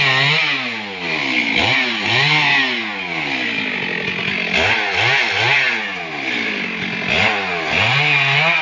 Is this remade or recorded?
recorded